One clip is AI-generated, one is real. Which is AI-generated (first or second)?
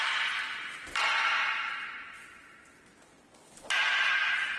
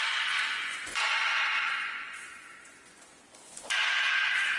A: second